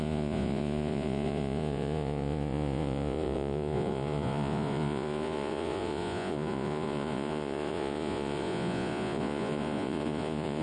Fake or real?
fake